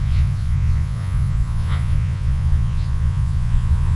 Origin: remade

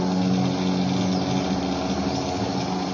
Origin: recorded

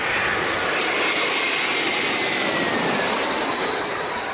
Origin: recorded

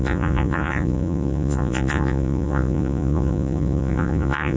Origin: remade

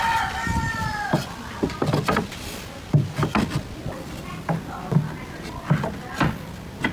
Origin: recorded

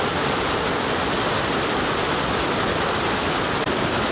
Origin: recorded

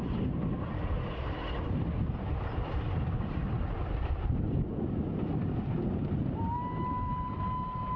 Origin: recorded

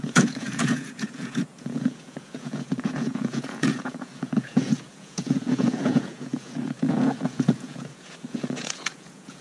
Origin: remade